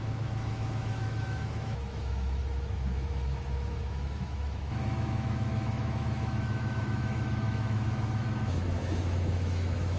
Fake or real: fake